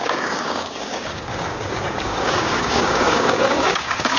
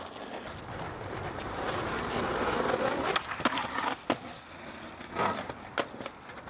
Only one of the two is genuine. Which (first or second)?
second